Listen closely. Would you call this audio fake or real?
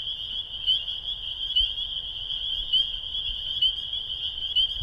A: real